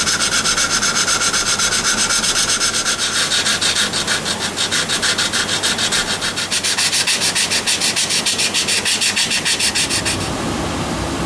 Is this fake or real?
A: real